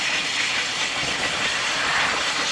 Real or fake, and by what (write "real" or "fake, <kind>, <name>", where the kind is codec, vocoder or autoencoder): real